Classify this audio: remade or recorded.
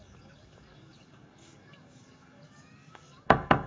remade